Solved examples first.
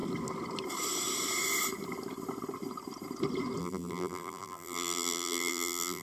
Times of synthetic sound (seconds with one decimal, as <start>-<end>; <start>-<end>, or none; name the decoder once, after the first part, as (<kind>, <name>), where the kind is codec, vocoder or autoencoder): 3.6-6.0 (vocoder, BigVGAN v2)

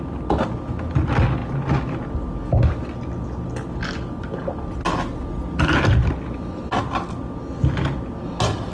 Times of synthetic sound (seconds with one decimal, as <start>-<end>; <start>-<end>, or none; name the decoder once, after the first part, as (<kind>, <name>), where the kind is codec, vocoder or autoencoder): none

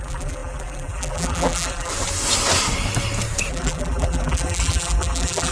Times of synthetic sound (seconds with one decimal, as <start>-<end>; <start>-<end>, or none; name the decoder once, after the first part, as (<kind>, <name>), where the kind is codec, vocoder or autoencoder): 0.0-1.9 (vocoder, BigVGAN v2); 3.5-5.5